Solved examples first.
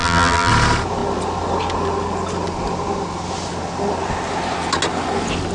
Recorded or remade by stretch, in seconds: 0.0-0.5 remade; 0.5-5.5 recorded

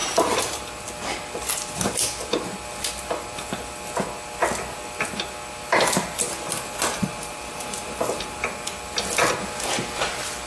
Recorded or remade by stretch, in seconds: 0.0-0.6 remade; 0.6-6.9 recorded; 6.9-8.4 remade; 8.4-10.5 recorded

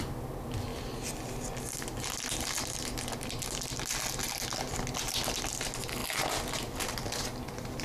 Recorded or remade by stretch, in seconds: 0.0-7.8 recorded

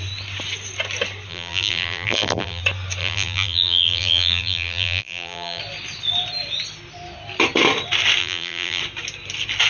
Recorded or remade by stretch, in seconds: 0.0-1.3 recorded; 1.3-2.6 remade; 2.6-3.0 recorded; 3.0-5.6 remade; 5.6-8.2 recorded; 8.2-8.8 remade; 8.8-9.7 recorded

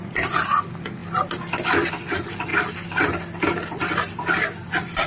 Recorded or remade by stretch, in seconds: 0.0-5.1 recorded

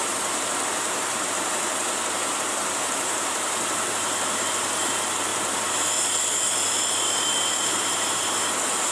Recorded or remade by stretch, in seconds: 0.0-8.9 remade

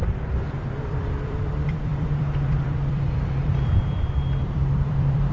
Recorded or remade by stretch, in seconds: 0.0-5.3 remade

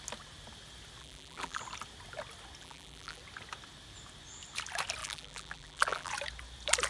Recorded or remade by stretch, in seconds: 0.0-1.0 recorded; 1.0-1.6 remade; 1.6-2.6 recorded; 2.6-3.2 remade; 3.2-5.0 recorded; 5.0-6.1 remade; 6.1-6.9 recorded